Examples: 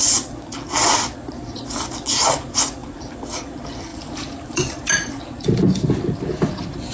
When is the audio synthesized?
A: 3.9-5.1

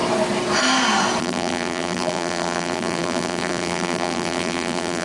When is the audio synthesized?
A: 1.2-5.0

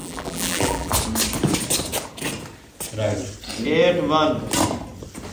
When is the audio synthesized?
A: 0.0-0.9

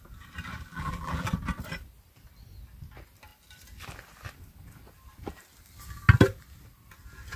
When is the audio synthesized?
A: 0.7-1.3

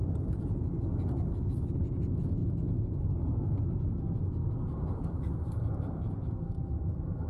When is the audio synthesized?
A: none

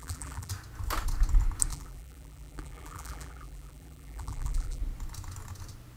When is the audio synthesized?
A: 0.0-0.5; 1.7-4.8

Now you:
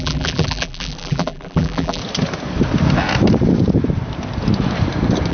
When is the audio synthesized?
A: 0.0-2.0

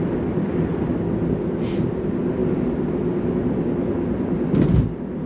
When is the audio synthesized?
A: none